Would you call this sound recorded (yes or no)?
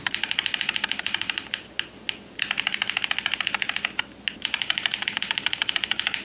yes